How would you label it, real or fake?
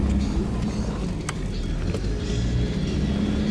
real